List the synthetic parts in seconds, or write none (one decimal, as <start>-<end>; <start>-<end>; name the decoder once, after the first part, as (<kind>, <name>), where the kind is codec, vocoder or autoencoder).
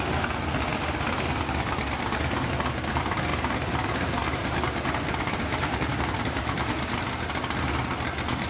3.3-7.0 (vocoder, BigVGAN v2)